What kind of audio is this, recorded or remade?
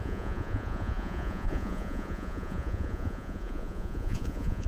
remade